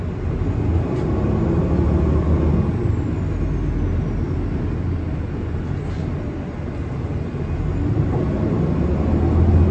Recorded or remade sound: recorded